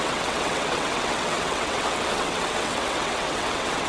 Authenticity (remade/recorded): remade